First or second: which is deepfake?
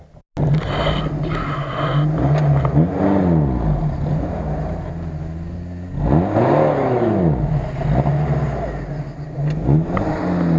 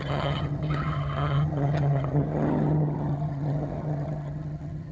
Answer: second